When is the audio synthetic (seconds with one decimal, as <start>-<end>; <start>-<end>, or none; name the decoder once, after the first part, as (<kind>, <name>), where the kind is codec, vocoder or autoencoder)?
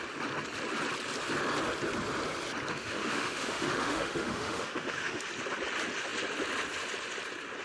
2.7-5.2 (autoencoder, DAC-VAE)